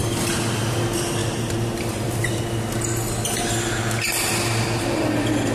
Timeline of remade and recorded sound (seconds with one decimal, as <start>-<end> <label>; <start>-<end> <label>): 0.0-1.2 recorded; 1.2-2.4 remade; 2.4-5.5 recorded

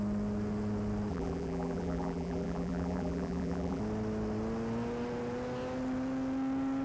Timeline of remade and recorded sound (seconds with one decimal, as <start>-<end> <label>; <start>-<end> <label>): 0.0-1.1 recorded; 1.1-3.8 remade; 3.8-6.8 recorded